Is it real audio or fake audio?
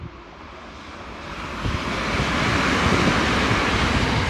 real